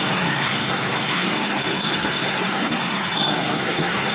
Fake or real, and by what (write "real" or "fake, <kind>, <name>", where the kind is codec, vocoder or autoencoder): fake, codec, SNAC